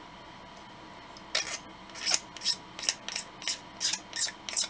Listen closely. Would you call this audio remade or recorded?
recorded